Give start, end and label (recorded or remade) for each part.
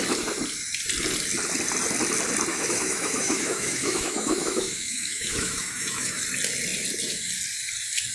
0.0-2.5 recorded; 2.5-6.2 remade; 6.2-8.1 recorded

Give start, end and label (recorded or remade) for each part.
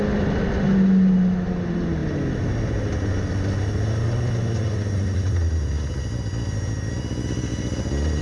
0.0-8.2 recorded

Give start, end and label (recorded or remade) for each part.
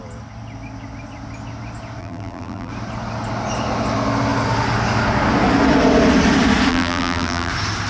0.0-2.0 recorded; 2.0-2.7 remade; 2.7-6.7 recorded; 6.7-7.5 remade; 7.5-7.9 recorded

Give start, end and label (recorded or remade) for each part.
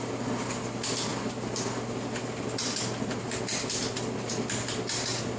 0.0-5.4 recorded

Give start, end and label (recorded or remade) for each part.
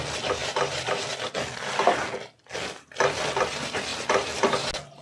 0.0-0.4 recorded; 0.4-1.1 remade; 1.1-3.9 recorded; 3.9-4.4 remade; 4.4-5.0 recorded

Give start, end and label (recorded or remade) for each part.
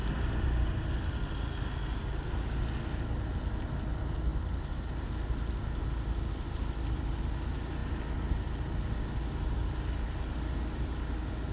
0.0-11.5 recorded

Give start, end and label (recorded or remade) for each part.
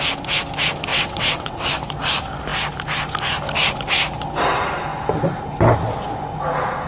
0.0-0.9 recorded; 0.9-1.7 remade; 1.7-6.9 recorded